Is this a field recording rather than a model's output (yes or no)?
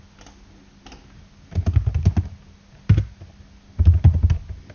yes